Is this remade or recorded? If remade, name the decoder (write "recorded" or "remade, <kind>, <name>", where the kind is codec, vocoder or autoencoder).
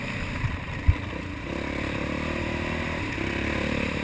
recorded